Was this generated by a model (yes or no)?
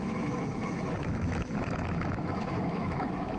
yes